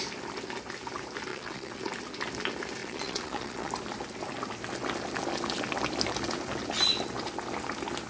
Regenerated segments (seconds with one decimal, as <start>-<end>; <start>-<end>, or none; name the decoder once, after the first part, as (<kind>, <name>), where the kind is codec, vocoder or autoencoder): 1.3-1.9 (vocoder, Vocos); 2.8-3.7